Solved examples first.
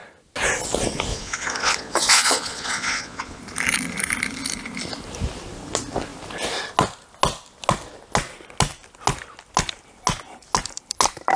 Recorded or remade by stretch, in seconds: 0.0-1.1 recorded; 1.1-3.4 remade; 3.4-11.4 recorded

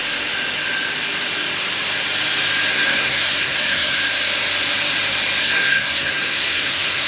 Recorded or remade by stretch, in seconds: 0.0-2.7 recorded; 2.7-4.0 remade; 4.0-5.4 recorded; 5.4-7.1 remade